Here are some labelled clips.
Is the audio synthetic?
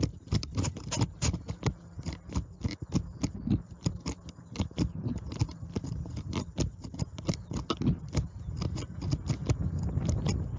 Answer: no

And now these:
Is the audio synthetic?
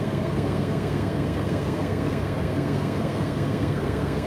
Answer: yes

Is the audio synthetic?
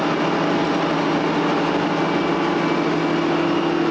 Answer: no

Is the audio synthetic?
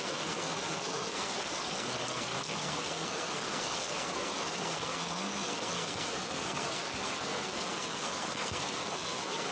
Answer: yes